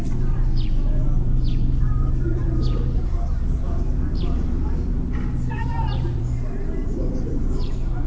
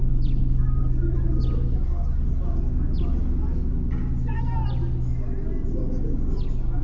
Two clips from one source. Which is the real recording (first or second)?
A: second